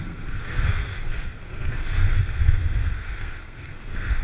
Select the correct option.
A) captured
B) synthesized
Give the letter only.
B